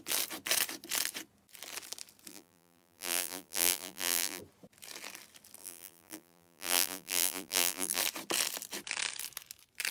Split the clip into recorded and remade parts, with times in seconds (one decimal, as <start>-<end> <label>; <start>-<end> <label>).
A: 0.0-2.3 recorded; 2.3-4.4 remade; 4.4-5.6 recorded; 5.6-8.0 remade; 8.0-9.9 recorded